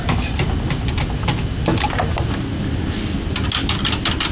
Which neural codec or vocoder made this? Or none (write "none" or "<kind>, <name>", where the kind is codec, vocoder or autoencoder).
none